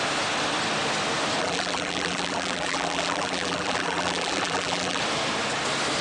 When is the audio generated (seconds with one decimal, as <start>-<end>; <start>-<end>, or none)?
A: 1.4-5.0